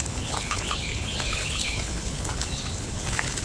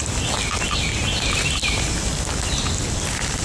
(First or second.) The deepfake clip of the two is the first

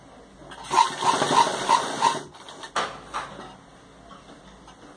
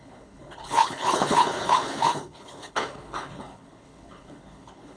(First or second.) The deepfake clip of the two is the second